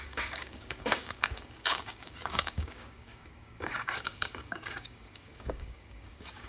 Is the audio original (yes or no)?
no